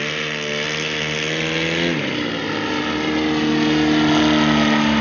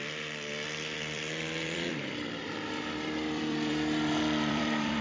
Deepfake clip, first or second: second